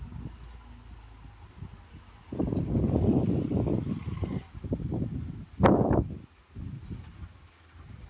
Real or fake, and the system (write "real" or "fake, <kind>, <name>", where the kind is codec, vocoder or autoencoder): real